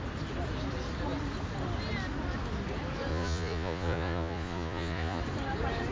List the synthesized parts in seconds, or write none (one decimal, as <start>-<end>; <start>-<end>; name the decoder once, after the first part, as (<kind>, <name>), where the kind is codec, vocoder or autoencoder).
3.1-5.2 (vocoder, Vocos)